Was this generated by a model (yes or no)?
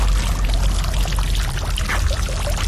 no